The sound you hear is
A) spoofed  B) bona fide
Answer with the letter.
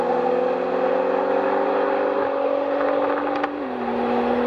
B